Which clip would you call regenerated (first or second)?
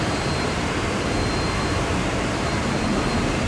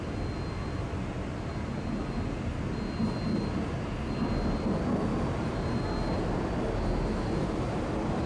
first